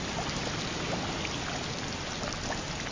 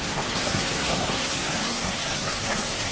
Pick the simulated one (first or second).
second